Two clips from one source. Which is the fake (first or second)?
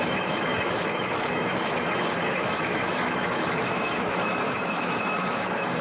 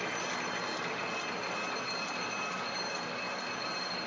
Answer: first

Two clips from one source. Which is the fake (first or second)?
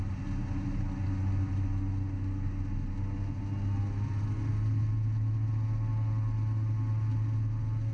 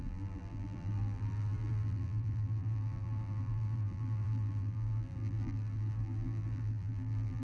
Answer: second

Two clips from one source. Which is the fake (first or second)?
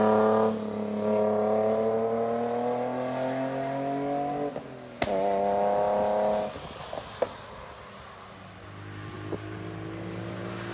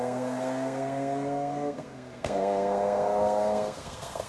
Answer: second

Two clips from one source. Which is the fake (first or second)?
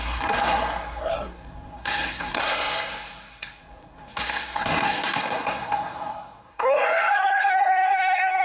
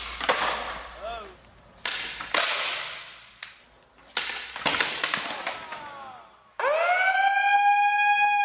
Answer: first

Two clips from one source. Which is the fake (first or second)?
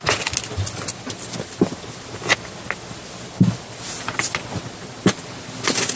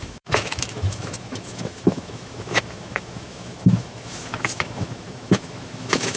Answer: second